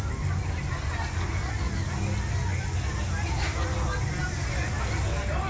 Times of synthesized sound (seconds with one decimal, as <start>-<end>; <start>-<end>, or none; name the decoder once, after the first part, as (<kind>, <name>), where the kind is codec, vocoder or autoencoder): none